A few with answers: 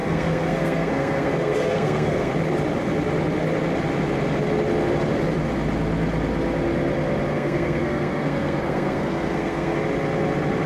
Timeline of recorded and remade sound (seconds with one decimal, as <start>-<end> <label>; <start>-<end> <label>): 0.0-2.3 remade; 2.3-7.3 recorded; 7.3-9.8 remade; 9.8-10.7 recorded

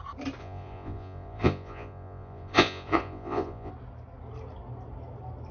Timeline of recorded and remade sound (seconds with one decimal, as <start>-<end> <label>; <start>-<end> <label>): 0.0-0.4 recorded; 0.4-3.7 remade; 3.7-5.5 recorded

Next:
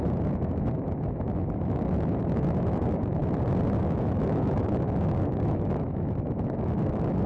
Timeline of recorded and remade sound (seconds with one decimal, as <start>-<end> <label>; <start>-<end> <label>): 0.0-3.2 remade; 3.2-3.8 recorded; 3.8-7.3 remade

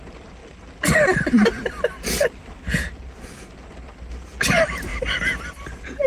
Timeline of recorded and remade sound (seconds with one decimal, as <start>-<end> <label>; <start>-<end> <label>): 0.0-6.1 recorded

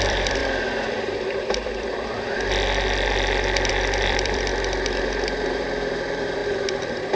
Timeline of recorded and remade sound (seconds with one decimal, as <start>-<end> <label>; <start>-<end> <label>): 0.0-4.5 remade; 4.5-5.0 recorded; 5.0-7.2 remade

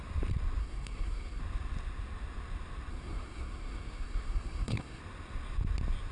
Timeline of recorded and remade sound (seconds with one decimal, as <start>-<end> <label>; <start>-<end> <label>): 0.0-0.6 recorded; 0.6-1.4 remade; 1.4-2.9 recorded; 2.9-5.0 remade; 5.0-6.1 recorded

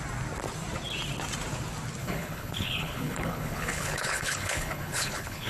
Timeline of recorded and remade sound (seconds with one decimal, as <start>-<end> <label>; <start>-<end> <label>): 0.0-2.0 recorded; 2.0-5.5 remade